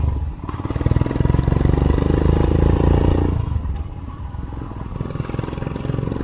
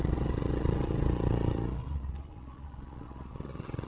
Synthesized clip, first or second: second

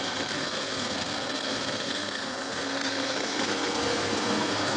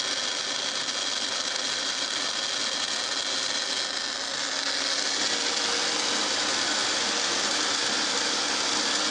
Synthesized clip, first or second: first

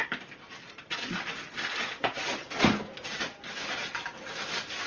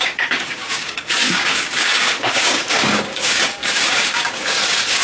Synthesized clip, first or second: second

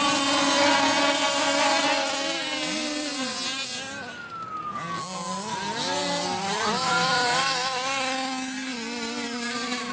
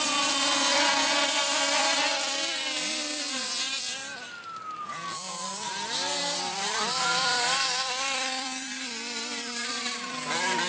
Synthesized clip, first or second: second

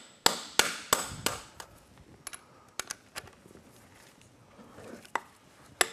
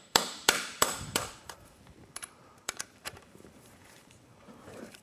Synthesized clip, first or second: second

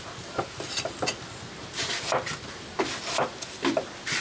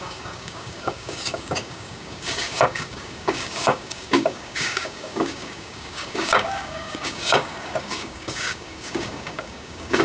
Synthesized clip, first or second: second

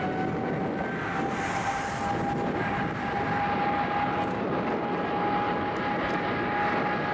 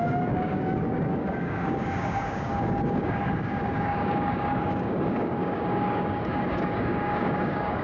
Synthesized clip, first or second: second